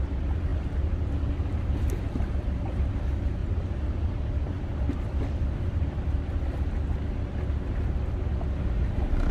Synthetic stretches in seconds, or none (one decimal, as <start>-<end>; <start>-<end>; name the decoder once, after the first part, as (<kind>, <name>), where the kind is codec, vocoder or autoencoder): 0.5-3.0 (vocoder, BigVGAN v2); 3.4-6.7